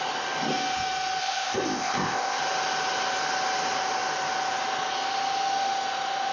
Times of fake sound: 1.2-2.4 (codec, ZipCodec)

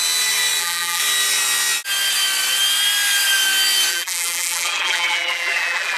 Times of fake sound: 0.6-1.0 (vocoder, BigVGAN v2); 3.9-6.0

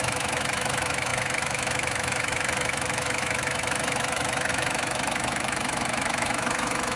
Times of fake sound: 0.0-7.0 (autoencoder, DAC-VAE)